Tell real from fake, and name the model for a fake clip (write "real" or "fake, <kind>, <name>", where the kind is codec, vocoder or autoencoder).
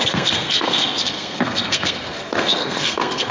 fake, codec, SNAC